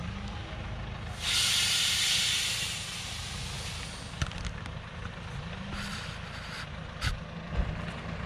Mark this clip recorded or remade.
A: recorded